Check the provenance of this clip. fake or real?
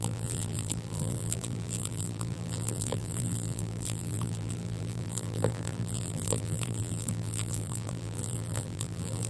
fake